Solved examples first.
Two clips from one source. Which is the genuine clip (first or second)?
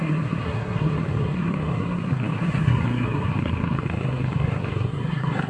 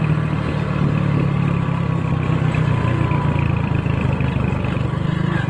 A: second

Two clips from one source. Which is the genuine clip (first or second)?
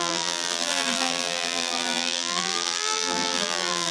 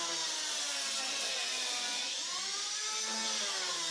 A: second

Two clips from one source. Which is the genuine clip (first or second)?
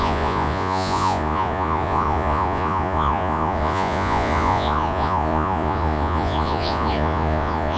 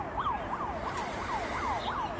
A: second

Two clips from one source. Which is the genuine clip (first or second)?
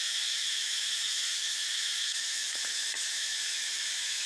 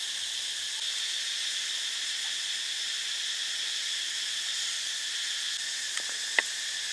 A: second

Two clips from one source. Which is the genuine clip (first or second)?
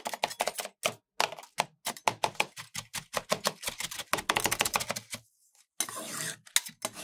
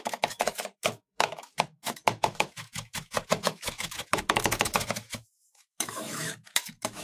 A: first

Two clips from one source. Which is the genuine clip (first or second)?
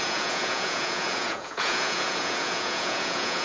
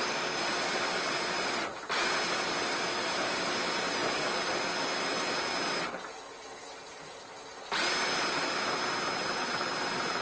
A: second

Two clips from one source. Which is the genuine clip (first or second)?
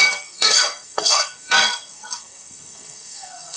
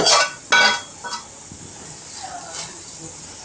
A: second